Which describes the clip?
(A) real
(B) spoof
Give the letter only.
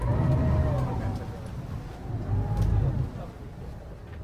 A